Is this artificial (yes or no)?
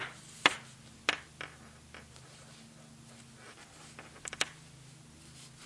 no